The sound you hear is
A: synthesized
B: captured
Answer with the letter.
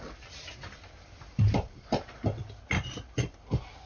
B